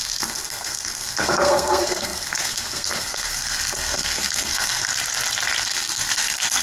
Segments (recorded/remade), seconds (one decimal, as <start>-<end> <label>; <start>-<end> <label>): 0.0-4.9 remade; 4.9-5.6 recorded; 5.6-6.6 remade